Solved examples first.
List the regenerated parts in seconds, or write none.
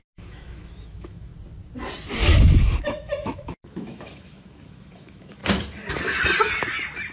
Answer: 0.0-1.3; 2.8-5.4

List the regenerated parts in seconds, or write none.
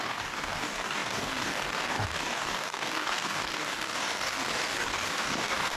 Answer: 0.0-5.8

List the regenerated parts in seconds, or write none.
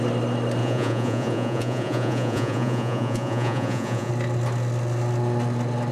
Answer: 0.6-4.1